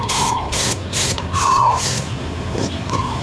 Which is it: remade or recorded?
remade